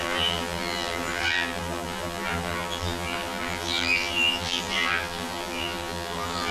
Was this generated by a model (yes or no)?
yes